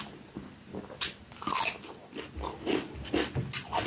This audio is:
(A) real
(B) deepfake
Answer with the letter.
A